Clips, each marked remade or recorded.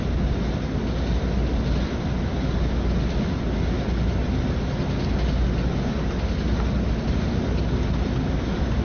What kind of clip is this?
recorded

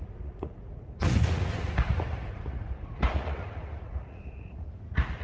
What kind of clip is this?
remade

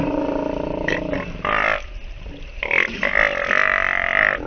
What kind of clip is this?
recorded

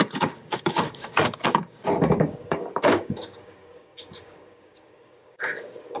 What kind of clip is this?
remade